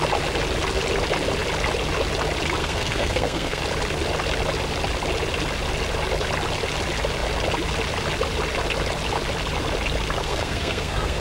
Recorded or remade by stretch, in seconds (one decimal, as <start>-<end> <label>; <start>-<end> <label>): 0.0-2.6 recorded; 2.6-3.6 remade; 3.6-10.2 recorded; 10.2-11.2 remade